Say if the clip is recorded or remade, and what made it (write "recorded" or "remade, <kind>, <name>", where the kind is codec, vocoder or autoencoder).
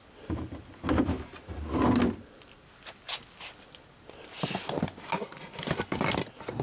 recorded